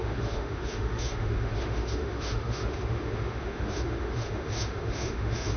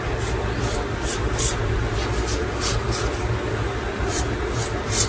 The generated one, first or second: first